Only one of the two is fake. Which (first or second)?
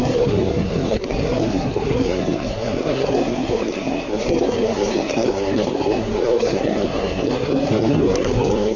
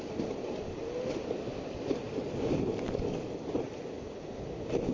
first